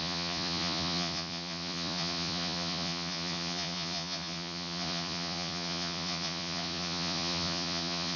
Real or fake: fake